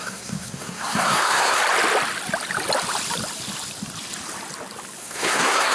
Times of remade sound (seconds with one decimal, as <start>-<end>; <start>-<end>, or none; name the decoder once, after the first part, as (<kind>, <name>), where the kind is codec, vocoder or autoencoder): 0.0-1.6 (codec, SNAC); 5.0-5.7